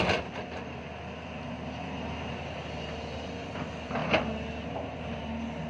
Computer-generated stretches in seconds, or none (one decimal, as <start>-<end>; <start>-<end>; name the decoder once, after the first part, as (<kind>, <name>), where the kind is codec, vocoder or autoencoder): none